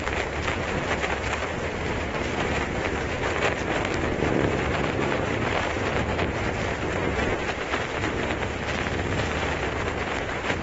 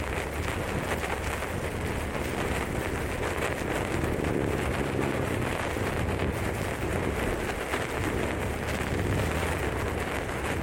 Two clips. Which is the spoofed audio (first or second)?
first